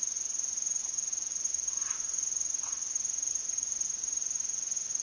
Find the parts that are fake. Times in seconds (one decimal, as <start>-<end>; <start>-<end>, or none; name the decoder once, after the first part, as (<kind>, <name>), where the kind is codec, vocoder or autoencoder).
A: none